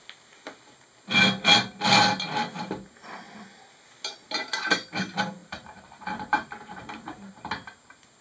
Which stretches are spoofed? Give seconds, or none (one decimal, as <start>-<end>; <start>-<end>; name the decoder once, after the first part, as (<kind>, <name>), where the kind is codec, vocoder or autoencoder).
5.4-7.3 (vocoder, BigVGAN v2)